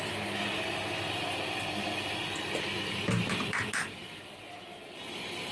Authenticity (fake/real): real